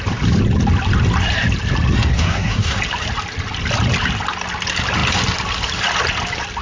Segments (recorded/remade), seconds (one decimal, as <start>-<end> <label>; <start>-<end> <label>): 0.0-2.1 recorded; 2.1-2.8 remade; 2.8-6.6 recorded

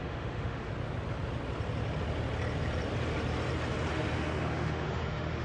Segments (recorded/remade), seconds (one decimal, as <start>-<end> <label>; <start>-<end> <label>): 0.0-0.7 remade; 0.7-3.9 recorded; 3.9-5.4 remade

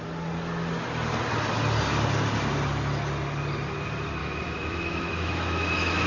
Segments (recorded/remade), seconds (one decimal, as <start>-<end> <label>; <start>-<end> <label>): 0.0-4.2 recorded; 4.2-6.1 remade

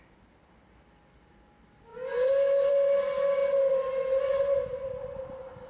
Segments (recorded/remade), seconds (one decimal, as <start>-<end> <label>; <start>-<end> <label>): 0.0-5.7 recorded

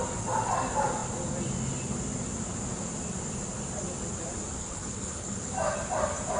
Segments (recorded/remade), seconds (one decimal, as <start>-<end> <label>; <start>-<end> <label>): 0.0-4.6 recorded; 4.6-5.5 remade; 5.5-6.4 recorded

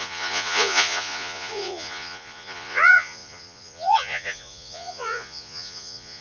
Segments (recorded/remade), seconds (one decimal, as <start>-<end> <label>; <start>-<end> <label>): 0.0-6.2 remade

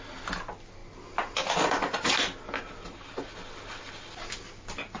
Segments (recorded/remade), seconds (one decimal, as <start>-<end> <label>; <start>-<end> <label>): 0.0-5.0 recorded